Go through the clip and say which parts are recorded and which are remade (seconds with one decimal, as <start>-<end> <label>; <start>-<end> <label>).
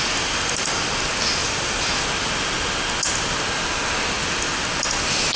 0.0-1.4 recorded; 1.4-2.1 remade; 2.1-5.4 recorded